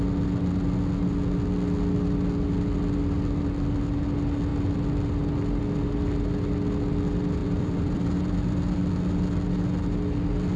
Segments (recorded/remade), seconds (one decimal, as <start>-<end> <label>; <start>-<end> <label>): 0.0-7.4 recorded; 7.4-8.8 remade; 8.8-10.6 recorded